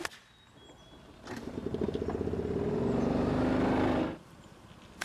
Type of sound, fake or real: real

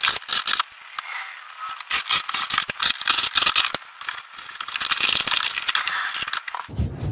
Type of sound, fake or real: real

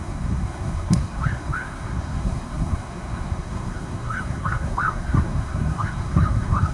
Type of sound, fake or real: fake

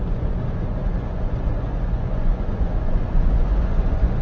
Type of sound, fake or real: fake